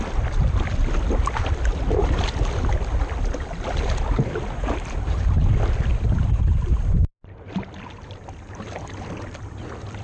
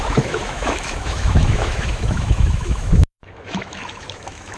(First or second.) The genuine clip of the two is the first